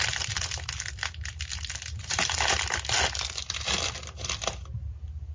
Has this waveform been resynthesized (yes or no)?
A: no